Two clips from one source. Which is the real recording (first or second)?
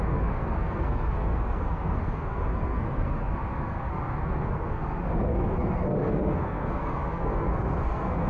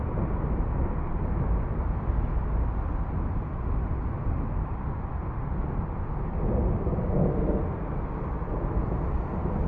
second